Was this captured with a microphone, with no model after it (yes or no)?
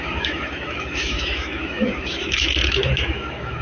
no